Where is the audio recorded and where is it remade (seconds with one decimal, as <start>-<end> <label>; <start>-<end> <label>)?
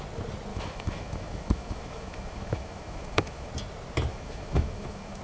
0.0-0.5 recorded; 0.5-3.5 remade; 3.5-4.1 recorded; 4.1-5.2 remade